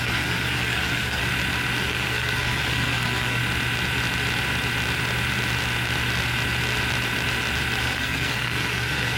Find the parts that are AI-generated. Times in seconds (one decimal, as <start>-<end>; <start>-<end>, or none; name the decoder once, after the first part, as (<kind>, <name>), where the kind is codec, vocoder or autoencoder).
0.0-1.2 (codec, SNAC); 1.8-3.4; 7.8-9.2